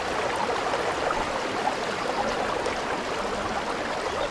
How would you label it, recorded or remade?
recorded